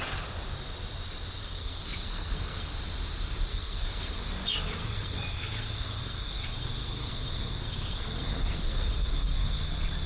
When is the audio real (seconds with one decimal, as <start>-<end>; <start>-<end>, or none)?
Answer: 0.0-1.4; 2.7-3.5; 4.3-4.8; 9.7-10.1